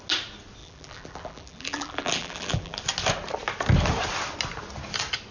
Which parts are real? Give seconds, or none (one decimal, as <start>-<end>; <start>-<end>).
0.0-0.6; 2.8-5.3